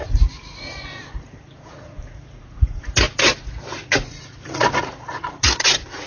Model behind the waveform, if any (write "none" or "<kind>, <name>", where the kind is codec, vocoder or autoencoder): vocoder, Vocos